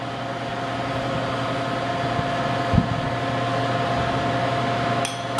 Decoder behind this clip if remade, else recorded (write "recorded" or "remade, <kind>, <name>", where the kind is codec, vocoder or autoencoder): recorded